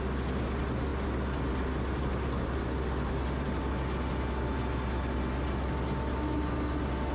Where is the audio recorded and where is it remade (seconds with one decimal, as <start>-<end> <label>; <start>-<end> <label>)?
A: 0.0-7.1 recorded